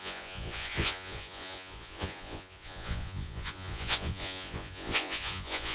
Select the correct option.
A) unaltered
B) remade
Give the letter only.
B